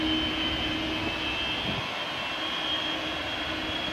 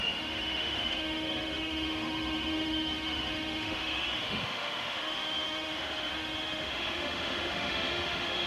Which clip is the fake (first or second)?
second